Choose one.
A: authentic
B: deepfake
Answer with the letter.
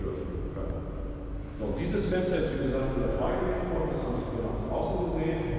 A